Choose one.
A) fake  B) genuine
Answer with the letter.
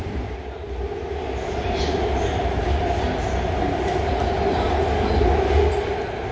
B